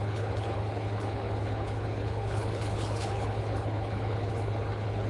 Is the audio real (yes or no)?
no